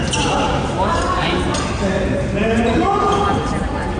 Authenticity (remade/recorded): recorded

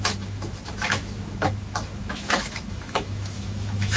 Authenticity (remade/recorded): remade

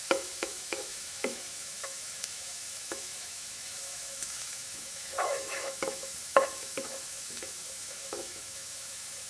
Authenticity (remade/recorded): remade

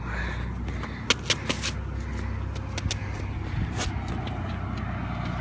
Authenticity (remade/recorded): recorded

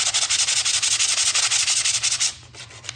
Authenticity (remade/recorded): recorded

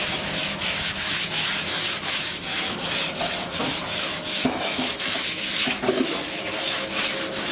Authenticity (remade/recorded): remade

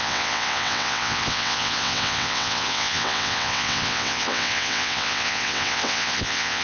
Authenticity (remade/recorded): remade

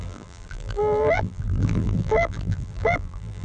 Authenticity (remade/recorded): remade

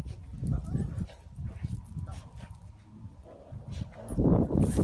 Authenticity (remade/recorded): recorded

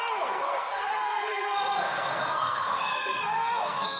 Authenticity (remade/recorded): remade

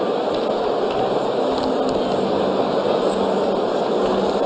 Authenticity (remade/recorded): recorded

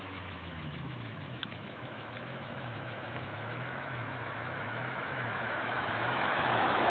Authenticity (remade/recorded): remade